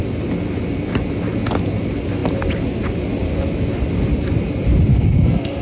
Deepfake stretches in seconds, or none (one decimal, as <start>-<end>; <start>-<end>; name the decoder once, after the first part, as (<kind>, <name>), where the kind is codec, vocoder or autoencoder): 4.9-5.6 (codec, SNAC)